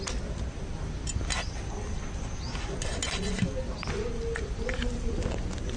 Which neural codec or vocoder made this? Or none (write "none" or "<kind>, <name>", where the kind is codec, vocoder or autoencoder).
none